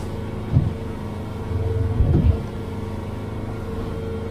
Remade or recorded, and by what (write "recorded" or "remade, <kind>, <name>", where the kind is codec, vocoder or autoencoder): recorded